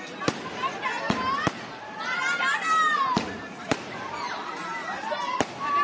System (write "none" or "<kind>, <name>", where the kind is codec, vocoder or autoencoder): none